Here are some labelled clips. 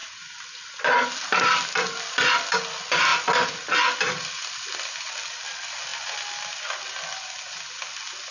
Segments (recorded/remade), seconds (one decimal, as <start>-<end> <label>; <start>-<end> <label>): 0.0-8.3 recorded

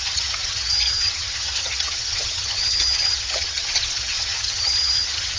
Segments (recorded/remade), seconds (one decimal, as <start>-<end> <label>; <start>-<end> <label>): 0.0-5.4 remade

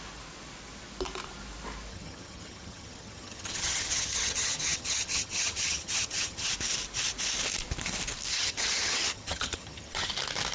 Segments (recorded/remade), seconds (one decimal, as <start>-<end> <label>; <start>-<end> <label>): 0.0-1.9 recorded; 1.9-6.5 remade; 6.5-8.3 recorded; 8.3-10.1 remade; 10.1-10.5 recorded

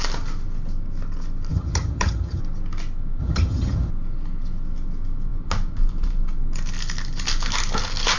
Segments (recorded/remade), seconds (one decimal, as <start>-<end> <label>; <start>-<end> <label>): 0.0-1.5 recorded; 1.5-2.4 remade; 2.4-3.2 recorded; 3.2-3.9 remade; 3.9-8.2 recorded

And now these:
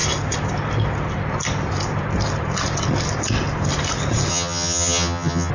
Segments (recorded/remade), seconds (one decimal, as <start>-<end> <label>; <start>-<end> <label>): 0.0-4.3 recorded; 4.3-5.5 remade

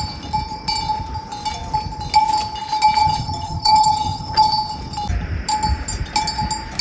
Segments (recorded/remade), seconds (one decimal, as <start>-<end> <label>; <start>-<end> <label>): 0.0-3.0 recorded; 3.0-4.5 remade; 4.5-6.8 recorded

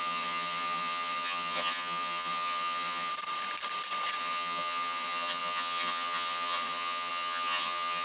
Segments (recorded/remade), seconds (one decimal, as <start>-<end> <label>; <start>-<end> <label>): 0.0-3.1 remade; 3.1-4.2 recorded; 4.2-8.0 remade